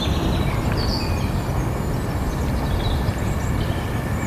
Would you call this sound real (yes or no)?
yes